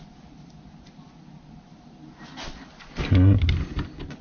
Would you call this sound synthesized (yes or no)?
no